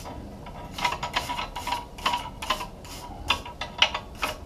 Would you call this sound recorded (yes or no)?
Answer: yes